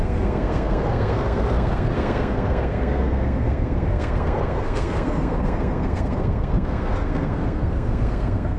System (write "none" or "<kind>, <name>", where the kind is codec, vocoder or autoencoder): codec, SNAC